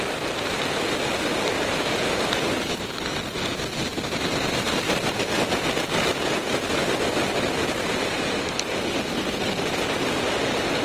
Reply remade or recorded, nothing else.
recorded